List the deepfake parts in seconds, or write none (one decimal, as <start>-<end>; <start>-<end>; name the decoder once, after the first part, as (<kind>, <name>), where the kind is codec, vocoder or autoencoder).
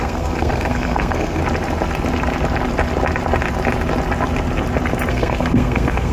0.0-1.4 (codec, SNAC); 5.1-6.1